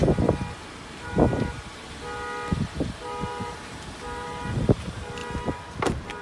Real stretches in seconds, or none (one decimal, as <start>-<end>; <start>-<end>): 0.0-1.0; 1.7-3.0